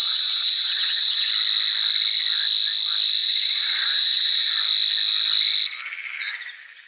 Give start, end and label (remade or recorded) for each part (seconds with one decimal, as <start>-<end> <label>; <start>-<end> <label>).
0.0-1.3 remade; 1.3-3.2 recorded; 3.2-4.5 remade; 4.5-6.9 recorded